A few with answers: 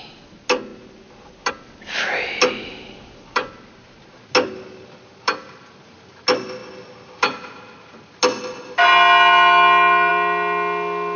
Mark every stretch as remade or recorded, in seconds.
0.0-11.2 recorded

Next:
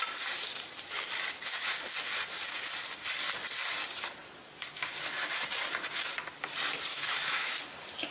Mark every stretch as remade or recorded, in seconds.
0.0-6.9 recorded; 6.9-7.6 remade; 7.6-8.1 recorded

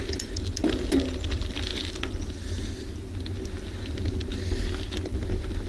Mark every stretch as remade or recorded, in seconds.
0.0-5.7 recorded